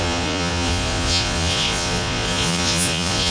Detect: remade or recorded remade